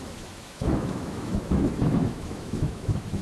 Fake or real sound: fake